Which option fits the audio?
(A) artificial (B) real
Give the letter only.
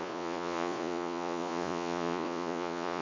A